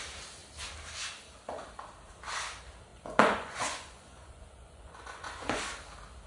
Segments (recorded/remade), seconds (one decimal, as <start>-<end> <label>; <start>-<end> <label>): 0.0-2.9 recorded; 2.9-5.6 remade; 5.6-6.3 recorded